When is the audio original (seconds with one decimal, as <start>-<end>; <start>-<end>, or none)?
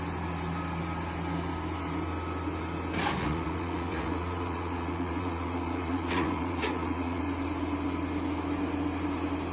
0.0-3.2; 7.2-9.5